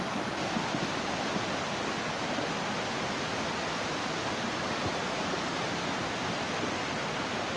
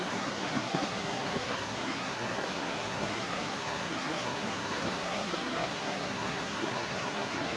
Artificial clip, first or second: second